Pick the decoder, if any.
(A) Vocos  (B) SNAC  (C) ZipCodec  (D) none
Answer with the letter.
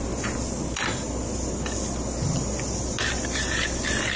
D